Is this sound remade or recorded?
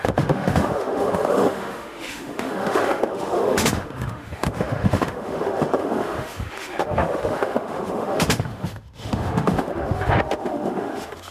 remade